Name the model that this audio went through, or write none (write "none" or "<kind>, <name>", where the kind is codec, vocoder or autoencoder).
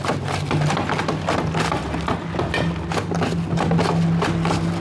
none